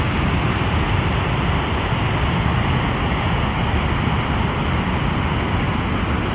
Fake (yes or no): no